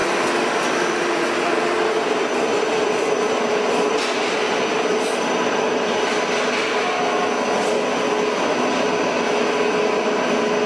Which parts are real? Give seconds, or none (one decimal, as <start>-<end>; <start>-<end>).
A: 0.0-10.7